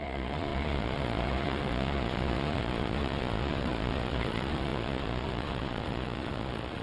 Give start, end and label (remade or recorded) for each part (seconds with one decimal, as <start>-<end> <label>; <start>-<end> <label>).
0.0-6.8 remade